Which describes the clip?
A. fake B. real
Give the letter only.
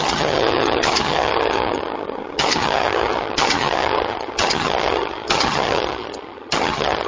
A